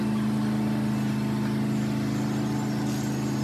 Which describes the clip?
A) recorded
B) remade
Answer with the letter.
A